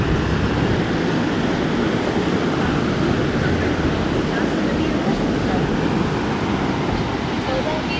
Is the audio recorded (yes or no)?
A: yes